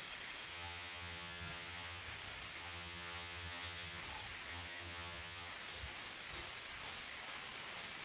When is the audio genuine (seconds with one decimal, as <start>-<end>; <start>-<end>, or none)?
0.0-0.5; 2.0-2.6; 4.0-4.5; 5.5-8.0

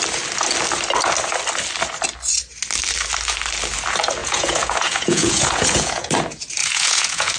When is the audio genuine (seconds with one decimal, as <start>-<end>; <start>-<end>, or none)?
0.0-4.2; 6.1-6.6

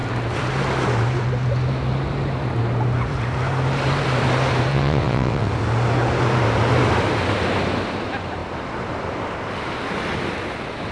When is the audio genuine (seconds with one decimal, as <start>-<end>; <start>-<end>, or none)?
0.0-4.7; 5.5-10.9

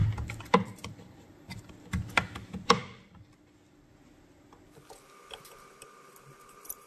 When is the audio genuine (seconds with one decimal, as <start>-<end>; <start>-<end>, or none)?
1.7-6.9

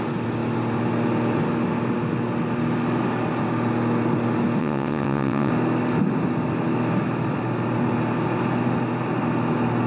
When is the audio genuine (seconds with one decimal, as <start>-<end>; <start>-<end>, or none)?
0.0-4.6; 5.5-9.9